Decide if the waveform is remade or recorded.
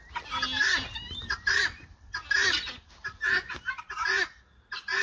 recorded